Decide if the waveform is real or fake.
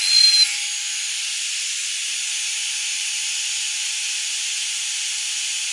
real